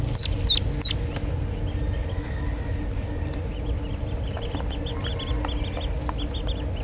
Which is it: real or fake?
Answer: real